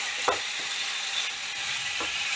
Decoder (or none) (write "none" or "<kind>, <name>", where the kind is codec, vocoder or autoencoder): none